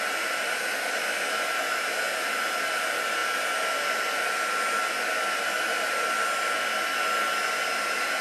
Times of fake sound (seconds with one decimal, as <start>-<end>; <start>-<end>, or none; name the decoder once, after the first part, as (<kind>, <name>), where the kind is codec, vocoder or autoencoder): none